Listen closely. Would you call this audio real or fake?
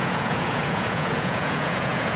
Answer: fake